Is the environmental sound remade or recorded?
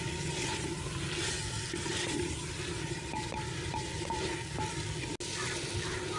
recorded